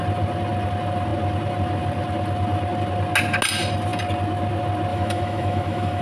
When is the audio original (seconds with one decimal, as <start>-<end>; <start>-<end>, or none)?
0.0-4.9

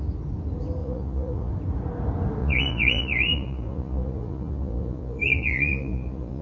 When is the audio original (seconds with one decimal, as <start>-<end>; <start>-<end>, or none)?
0.0-0.8; 1.5-2.4

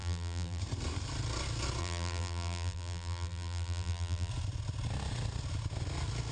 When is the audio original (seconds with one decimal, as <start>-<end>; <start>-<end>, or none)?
0.6-1.8; 4.3-6.3